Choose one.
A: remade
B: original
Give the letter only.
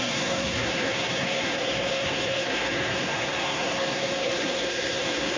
A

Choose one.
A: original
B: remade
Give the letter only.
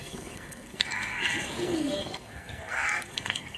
B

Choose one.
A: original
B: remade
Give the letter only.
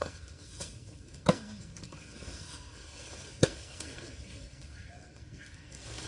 B